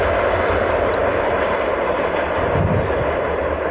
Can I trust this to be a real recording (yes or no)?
yes